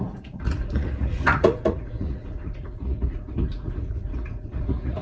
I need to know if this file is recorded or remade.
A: remade